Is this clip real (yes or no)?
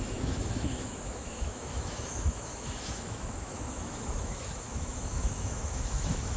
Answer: no